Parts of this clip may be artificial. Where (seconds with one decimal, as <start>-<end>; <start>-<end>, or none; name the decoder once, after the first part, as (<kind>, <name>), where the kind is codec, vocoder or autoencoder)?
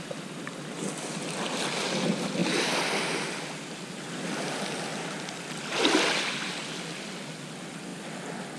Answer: none